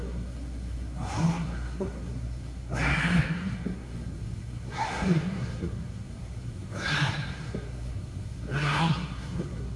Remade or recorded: remade